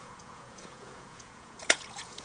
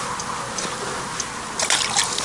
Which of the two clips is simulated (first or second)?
first